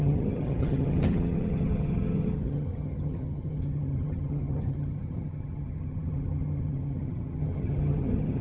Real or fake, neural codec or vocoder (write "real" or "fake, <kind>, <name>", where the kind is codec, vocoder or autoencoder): fake, vocoder, HiFi-GAN